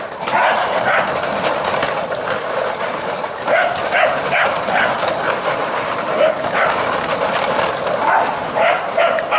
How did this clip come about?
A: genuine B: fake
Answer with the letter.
B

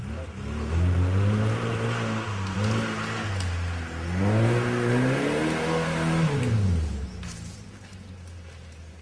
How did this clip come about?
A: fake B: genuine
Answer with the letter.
B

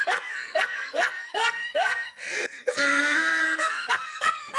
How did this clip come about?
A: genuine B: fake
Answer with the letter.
B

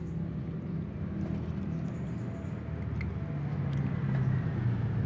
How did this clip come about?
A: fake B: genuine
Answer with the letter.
B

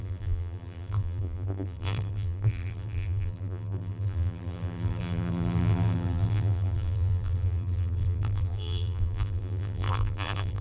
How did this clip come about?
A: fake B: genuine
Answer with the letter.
A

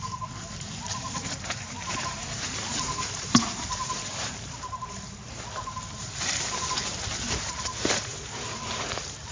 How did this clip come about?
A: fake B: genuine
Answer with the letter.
A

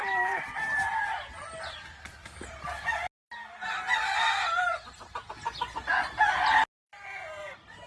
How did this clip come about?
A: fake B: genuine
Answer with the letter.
B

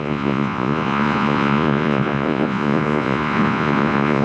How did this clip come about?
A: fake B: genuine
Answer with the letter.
A